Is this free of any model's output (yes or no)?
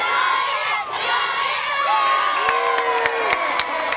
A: yes